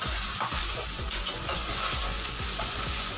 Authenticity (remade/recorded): remade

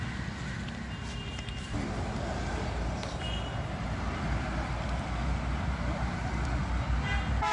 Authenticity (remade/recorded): recorded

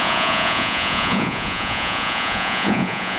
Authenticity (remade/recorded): remade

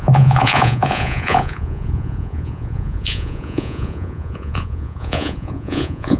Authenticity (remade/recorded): remade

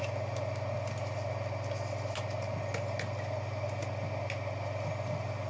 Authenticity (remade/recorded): recorded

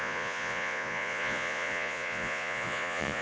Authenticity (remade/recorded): remade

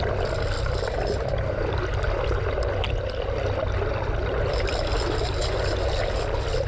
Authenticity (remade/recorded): recorded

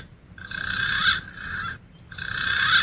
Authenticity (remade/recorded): recorded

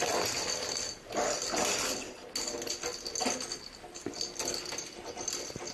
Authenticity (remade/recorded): recorded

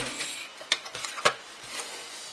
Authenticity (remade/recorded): remade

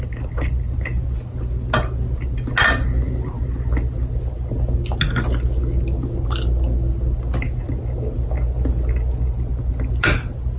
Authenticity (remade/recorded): recorded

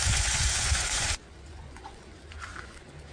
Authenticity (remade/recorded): remade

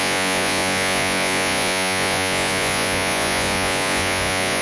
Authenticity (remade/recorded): remade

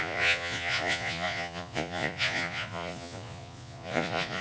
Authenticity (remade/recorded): remade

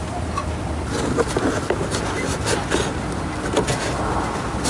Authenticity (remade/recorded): recorded